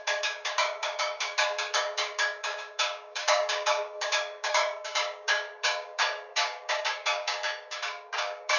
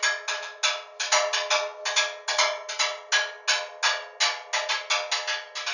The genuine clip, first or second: second